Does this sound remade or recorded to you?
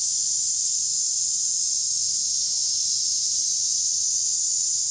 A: recorded